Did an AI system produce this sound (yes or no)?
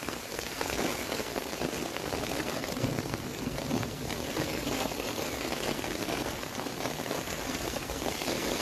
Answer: yes